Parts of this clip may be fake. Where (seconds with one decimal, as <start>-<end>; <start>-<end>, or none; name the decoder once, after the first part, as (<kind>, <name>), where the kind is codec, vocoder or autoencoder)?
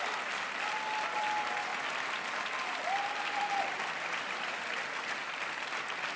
0.0-1.7 (vocoder, BigVGAN v2); 3.6-5.2